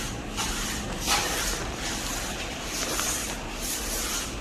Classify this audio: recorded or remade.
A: recorded